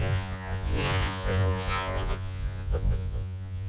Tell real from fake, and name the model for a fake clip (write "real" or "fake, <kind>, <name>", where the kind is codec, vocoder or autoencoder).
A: fake, vocoder, Vocos